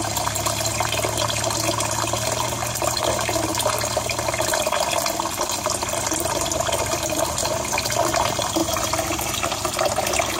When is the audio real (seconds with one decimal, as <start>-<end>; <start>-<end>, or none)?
3.5-4.3

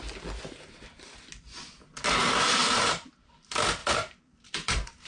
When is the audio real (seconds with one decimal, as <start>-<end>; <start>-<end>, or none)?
0.0-2.6; 3.3-3.8

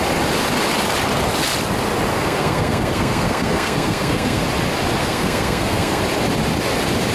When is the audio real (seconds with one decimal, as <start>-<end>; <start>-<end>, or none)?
0.0-2.1; 4.4-5.0; 6.0-7.1

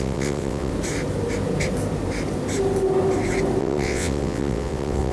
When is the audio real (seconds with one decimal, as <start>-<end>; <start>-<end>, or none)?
0.7-3.6

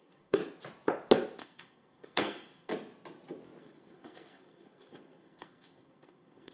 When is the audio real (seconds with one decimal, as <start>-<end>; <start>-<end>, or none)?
0.4-1.4; 2.7-3.6

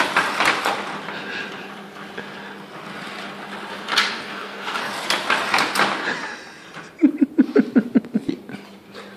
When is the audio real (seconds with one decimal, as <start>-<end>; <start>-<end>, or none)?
0.0-4.1; 4.9-9.2